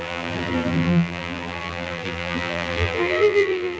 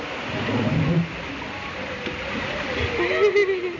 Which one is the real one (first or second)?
second